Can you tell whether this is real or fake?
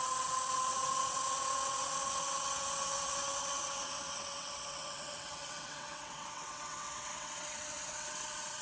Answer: fake